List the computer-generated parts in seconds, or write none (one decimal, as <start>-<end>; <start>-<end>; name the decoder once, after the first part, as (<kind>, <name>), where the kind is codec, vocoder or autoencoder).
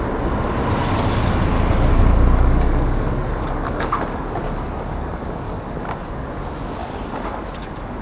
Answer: 1.9-6.3 (codec, DAC); 6.8-8.0